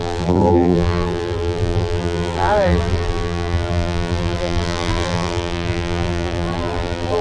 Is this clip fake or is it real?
fake